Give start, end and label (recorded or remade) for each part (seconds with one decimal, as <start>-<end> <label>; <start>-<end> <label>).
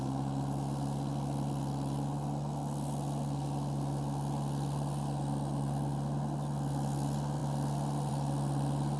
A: 0.0-9.0 recorded